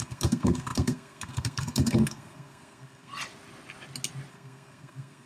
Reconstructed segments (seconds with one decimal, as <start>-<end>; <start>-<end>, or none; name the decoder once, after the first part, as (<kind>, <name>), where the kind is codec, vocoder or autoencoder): 0.0-3.1 (codec, SNAC); 4.3-5.3